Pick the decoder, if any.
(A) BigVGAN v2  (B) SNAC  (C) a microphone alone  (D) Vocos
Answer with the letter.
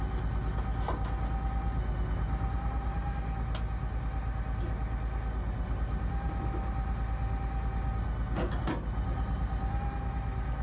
C